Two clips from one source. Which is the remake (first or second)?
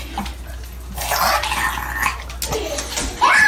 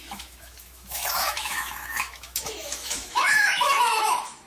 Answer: second